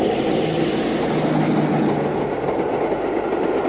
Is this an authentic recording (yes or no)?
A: yes